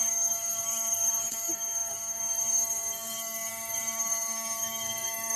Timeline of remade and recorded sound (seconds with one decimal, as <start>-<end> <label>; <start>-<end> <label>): 0.0-5.4 remade

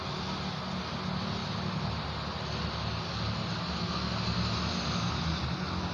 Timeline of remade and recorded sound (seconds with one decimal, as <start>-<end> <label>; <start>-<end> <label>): 0.0-5.9 recorded

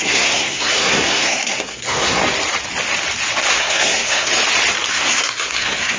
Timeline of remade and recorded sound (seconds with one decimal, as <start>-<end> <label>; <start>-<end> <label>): 0.0-2.2 remade; 2.2-3.5 recorded; 3.5-4.3 remade; 4.3-4.9 recorded; 4.9-6.0 remade